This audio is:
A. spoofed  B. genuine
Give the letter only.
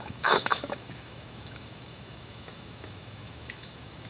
A